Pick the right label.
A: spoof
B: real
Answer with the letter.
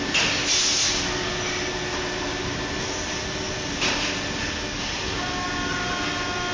B